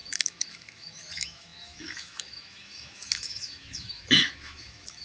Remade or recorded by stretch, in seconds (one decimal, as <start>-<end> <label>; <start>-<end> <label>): 0.0-5.0 remade